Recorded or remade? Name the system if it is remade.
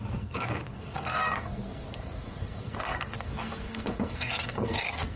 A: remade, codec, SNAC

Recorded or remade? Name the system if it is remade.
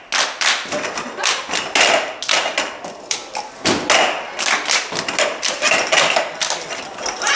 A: recorded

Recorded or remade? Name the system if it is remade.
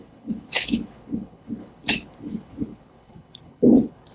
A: remade, codec, HILCodec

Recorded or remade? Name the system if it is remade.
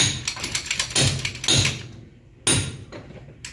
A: recorded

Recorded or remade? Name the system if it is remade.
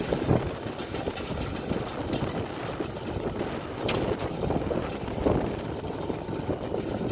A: recorded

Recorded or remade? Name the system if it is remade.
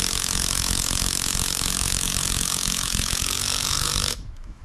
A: remade, autoencoder, DAC-VAE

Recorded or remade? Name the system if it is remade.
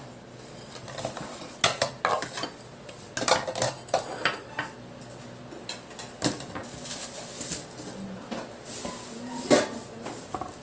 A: recorded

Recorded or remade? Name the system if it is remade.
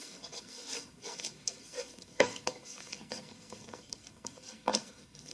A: remade, codec, SNAC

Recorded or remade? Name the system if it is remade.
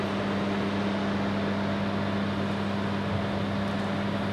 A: recorded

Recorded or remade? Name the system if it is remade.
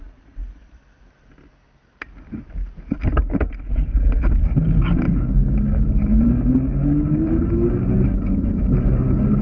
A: recorded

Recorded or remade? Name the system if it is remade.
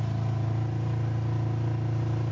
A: recorded